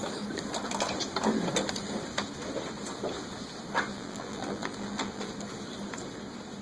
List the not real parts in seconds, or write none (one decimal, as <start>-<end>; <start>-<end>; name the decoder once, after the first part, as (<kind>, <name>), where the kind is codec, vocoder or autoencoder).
3.9-5.3 (vocoder, BigVGAN v2)